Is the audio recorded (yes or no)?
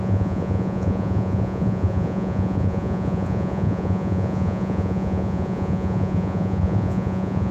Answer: no